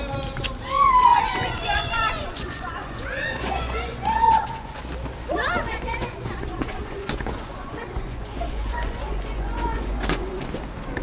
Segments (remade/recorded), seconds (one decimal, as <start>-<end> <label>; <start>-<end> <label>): 0.0-1.1 recorded; 1.1-4.8 remade; 4.8-5.7 recorded; 5.7-10.4 remade; 10.4-11.0 recorded